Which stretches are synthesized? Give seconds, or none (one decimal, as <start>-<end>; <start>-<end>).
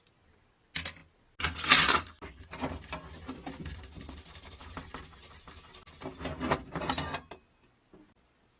none